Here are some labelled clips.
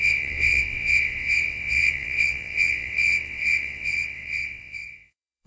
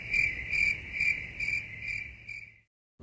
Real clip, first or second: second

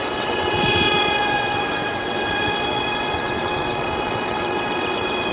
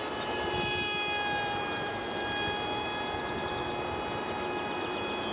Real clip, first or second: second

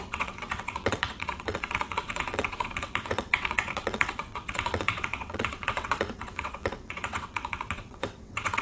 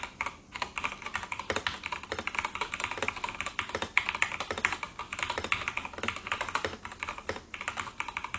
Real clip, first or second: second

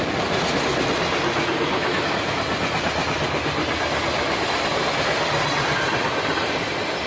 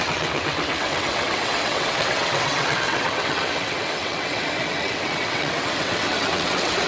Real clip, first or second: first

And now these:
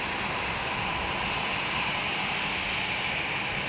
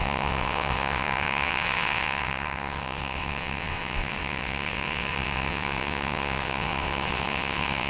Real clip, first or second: first